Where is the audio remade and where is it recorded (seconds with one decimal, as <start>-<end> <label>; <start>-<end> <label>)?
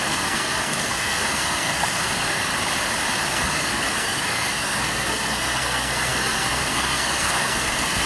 0.0-2.5 remade; 2.5-3.3 recorded; 3.3-8.1 remade